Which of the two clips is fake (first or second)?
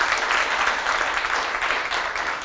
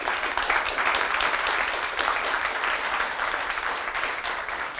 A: second